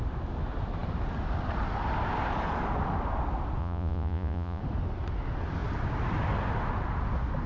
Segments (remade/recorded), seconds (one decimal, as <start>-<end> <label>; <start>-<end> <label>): 0.0-3.6 recorded; 3.6-4.6 remade; 4.6-7.5 recorded